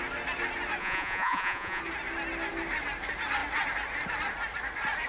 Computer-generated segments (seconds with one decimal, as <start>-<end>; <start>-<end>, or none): 0.8-1.8